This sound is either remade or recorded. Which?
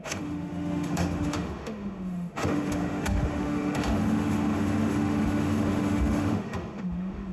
remade